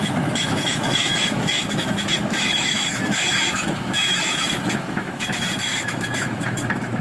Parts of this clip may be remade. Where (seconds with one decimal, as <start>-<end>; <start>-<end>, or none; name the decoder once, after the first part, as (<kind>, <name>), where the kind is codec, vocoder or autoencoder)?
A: 0.0-7.0 (autoencoder, DAC-VAE)